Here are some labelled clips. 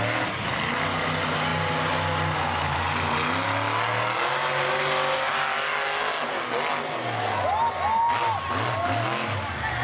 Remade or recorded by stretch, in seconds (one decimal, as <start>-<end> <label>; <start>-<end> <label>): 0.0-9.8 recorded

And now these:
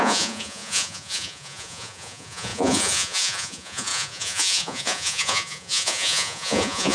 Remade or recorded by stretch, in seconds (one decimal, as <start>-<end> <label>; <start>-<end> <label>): 0.0-6.9 remade

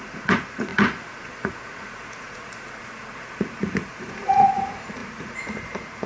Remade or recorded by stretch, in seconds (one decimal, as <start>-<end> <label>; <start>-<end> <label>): 0.0-6.1 remade

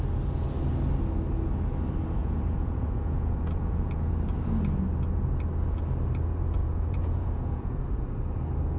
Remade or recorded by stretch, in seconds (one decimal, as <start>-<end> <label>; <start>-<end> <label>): 0.0-2.2 recorded; 2.2-4.1 remade; 4.1-6.6 recorded; 6.6-8.2 remade; 8.2-8.8 recorded

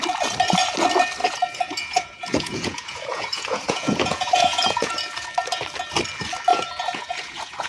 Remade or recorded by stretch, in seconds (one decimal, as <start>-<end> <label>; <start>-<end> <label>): 0.0-1.2 recorded; 1.2-4.9 remade; 4.9-6.5 recorded; 6.5-7.7 remade

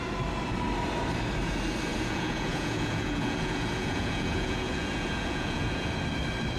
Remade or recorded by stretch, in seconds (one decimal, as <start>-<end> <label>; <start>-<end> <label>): 0.0-1.9 recorded; 1.9-5.9 remade; 5.9-6.6 recorded

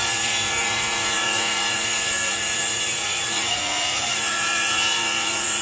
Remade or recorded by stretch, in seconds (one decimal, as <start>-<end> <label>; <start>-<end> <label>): 0.0-5.6 remade

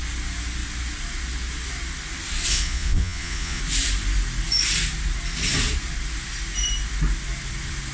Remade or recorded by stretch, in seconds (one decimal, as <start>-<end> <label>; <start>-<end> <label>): 0.0-2.5 recorded; 2.5-3.6 remade; 3.6-7.9 recorded